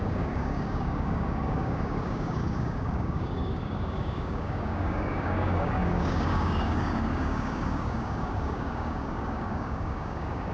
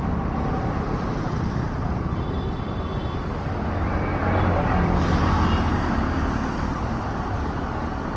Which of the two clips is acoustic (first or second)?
second